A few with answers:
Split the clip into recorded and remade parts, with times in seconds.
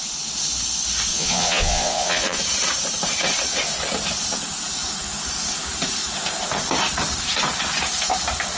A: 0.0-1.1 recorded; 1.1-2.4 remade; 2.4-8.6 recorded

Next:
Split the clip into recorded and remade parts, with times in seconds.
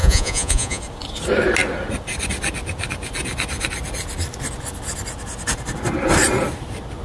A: 0.0-0.8 remade; 0.8-7.0 recorded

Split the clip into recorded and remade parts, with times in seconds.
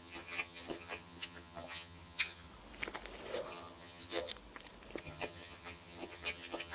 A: 0.0-2.5 remade; 2.5-3.5 recorded; 3.5-4.3 remade; 4.3-5.0 recorded; 5.0-6.7 remade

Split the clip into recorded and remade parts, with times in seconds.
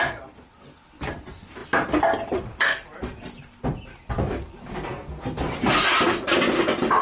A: 0.0-7.0 recorded